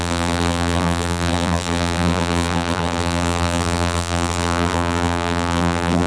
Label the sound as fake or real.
fake